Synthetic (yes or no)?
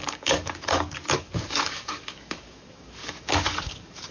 yes